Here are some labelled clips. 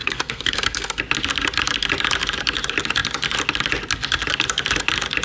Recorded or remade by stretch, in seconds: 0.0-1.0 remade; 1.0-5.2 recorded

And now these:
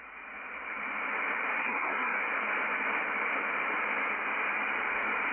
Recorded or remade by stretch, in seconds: 0.0-1.6 recorded; 1.6-2.2 remade; 2.2-5.3 recorded